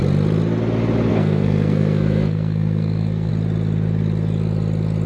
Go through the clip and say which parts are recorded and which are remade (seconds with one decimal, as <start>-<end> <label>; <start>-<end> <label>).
0.0-1.1 recorded; 1.1-3.3 remade; 3.3-5.1 recorded